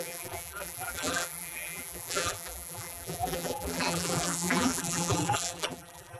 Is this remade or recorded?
remade